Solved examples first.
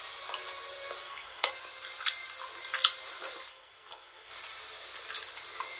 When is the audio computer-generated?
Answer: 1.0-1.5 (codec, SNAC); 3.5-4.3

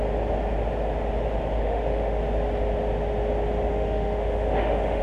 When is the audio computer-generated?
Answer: 1.6-2.2 (autoencoder, DAC-VAE); 3.7-5.0

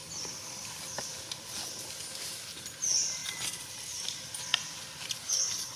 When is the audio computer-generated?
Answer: none

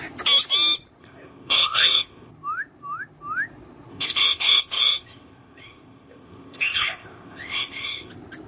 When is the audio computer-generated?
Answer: 1.0-2.3 (codec, ZipCodec); 3.9-8.1

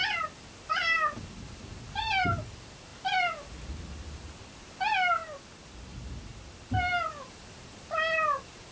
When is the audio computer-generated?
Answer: 2.9-3.8 (vocoder, BigVGAN v2)

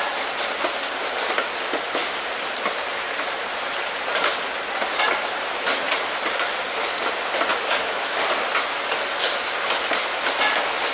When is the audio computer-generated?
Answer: 2.0-6.6 (vocoder, BigVGAN v2)